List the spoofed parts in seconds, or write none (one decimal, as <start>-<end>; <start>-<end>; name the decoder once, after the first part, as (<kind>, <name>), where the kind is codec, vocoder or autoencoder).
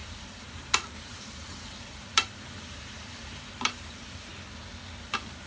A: 0.0-4.3 (vocoder, BigVGAN v2); 5.0-5.5